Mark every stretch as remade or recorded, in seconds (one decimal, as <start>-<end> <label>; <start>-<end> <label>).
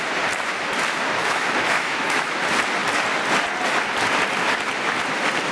0.0-1.2 recorded; 1.2-2.4 remade; 2.4-5.5 recorded